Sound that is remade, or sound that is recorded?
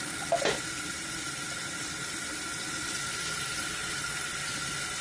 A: recorded